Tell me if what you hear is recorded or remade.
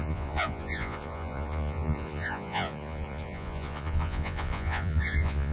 remade